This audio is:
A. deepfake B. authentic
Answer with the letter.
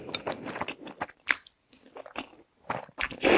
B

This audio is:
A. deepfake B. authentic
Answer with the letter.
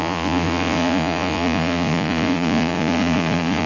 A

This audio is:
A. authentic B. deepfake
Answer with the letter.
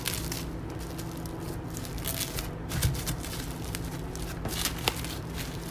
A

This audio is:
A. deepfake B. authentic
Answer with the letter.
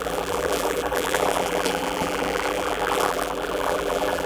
A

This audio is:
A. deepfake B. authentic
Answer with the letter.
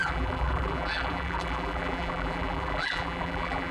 A